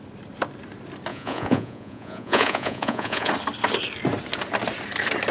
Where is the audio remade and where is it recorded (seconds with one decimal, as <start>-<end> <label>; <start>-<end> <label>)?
0.0-1.1 recorded; 1.1-3.3 remade; 3.3-5.3 recorded